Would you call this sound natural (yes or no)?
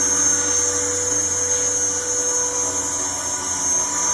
yes